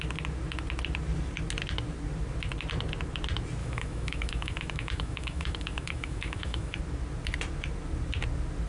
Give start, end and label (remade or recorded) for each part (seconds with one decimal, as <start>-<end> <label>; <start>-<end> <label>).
0.0-3.6 recorded; 3.6-6.8 remade; 6.8-8.7 recorded